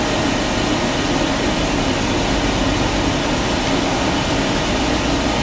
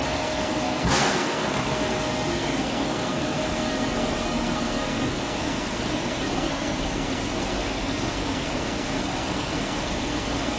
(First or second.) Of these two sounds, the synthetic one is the second